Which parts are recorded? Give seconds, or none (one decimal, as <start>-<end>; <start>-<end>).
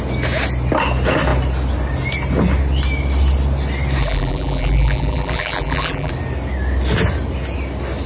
0.0-4.0; 6.1-8.1